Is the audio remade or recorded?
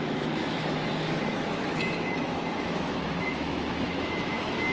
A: remade